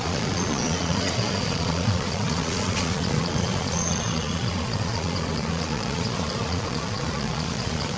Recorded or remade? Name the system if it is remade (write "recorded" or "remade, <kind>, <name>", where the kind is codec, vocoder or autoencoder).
remade, vocoder, Vocos